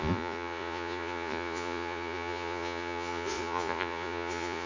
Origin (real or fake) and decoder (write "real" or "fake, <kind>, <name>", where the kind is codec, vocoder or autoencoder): fake, vocoder, Vocos